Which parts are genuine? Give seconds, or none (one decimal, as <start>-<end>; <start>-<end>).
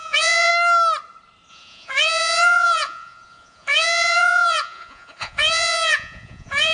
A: 0.5-1.5